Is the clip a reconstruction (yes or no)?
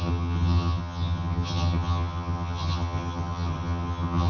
yes